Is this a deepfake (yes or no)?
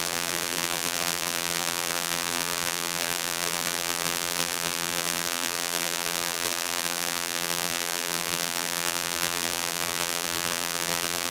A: yes